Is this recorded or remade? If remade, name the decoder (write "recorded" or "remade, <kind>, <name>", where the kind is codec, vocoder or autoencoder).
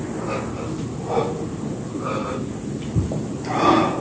recorded